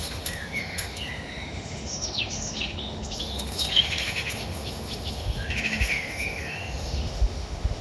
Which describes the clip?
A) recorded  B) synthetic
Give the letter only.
B